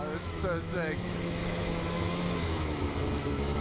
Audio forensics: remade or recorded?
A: remade